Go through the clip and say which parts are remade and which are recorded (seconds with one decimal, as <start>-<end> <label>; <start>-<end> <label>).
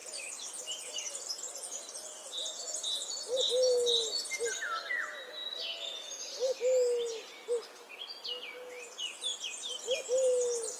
0.0-10.8 recorded